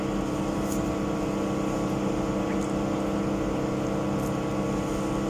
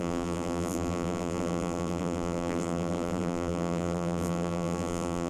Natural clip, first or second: first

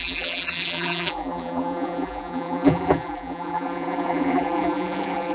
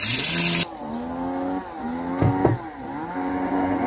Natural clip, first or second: second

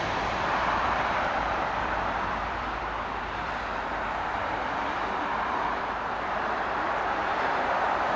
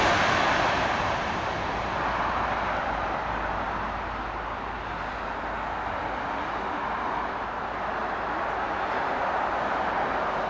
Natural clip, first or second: second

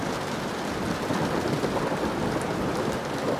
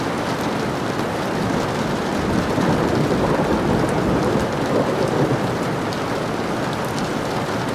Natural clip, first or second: second